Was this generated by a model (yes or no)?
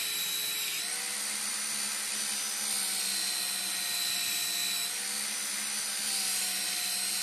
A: no